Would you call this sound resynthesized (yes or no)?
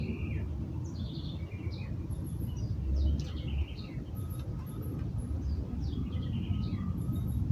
no